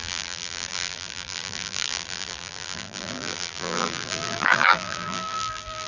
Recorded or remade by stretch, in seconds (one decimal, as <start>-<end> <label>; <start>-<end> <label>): 0.0-5.9 remade